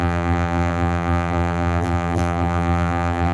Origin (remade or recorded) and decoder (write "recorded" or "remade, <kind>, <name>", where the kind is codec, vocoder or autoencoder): remade, vocoder, BigVGAN v2